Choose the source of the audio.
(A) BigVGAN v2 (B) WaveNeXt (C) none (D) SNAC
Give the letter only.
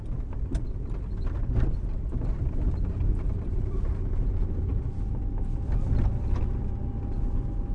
C